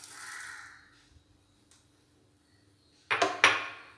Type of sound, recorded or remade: recorded